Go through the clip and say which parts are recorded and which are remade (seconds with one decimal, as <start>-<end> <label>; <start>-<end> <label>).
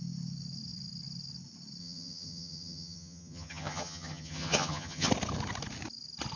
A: 0.0-1.8 recorded; 1.8-5.1 remade; 5.1-6.4 recorded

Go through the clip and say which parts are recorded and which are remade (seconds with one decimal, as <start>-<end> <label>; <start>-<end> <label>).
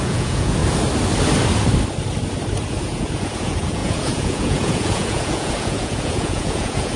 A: 0.0-0.6 remade; 0.6-2.8 recorded; 2.8-7.0 remade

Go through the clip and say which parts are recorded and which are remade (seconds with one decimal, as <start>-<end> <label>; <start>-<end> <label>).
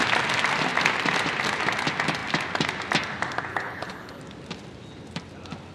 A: 0.0-3.5 recorded; 3.5-4.2 remade; 4.2-5.7 recorded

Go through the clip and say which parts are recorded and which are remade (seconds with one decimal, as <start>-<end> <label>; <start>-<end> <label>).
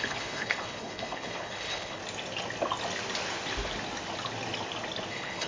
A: 0.0-2.0 remade; 2.0-5.1 recorded; 5.1-5.5 remade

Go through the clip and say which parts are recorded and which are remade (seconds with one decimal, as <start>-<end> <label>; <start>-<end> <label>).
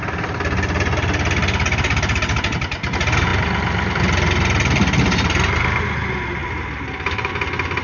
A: 0.0-6.4 recorded; 6.4-7.3 remade; 7.3-7.8 recorded